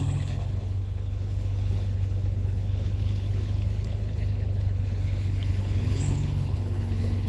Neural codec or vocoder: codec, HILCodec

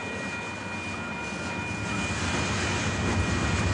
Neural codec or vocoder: none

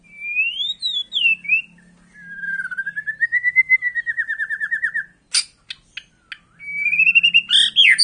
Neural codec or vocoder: none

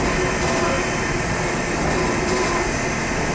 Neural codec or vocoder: none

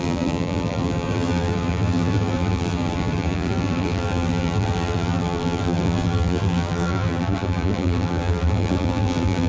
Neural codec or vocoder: vocoder, BigVGAN v2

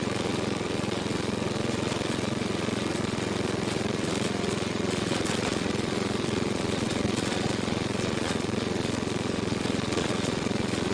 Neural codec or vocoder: vocoder, Vocos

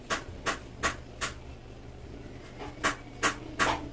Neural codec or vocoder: none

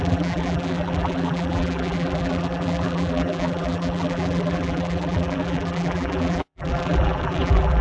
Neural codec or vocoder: vocoder, BigVGAN v2